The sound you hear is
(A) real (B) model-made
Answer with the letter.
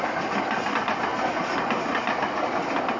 A